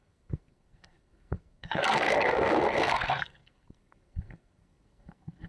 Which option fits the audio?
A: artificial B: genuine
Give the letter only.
A